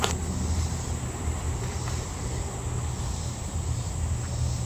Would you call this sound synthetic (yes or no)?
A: no